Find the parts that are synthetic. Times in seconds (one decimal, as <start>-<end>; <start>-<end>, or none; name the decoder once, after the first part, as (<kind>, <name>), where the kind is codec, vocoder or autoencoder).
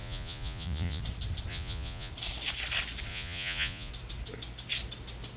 0.0-1.0 (vocoder, Vocos); 1.5-2.1; 3.1-3.9